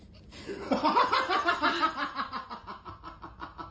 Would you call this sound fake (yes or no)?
no